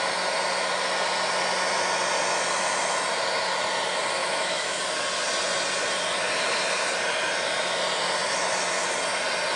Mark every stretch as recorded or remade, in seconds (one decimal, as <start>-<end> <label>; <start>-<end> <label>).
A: 0.0-4.2 recorded; 4.2-4.8 remade; 4.8-9.6 recorded